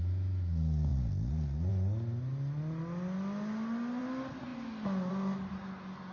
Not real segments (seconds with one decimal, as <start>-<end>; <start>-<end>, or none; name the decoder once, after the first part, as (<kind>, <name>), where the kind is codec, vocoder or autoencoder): none